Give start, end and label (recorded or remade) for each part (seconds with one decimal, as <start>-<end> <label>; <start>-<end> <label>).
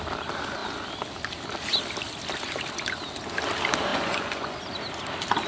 0.0-3.9 recorded; 3.9-4.6 remade; 4.6-5.5 recorded